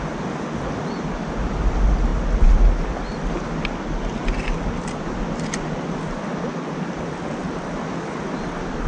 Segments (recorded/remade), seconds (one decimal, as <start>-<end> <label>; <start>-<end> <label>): 0.0-8.9 recorded